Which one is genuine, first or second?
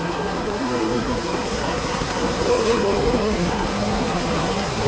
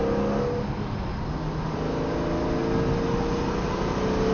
second